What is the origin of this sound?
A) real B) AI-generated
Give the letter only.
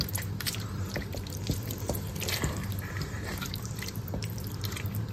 B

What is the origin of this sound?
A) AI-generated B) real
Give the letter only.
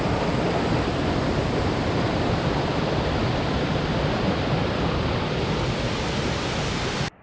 A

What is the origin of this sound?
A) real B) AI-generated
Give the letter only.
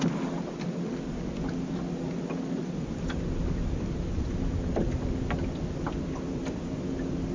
A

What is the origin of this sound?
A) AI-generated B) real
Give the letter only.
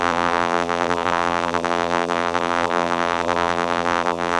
A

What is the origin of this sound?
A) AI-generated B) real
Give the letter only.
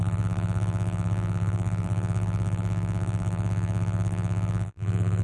A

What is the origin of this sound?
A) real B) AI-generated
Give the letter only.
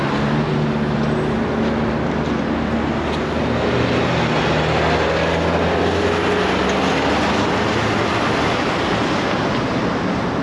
A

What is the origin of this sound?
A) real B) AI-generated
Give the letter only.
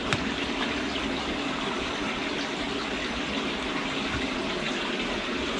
A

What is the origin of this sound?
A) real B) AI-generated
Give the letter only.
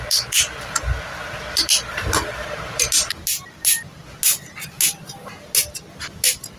A